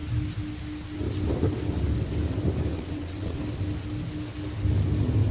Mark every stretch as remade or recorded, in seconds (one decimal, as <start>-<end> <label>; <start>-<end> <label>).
0.0-2.7 recorded; 2.7-3.4 remade; 3.4-5.3 recorded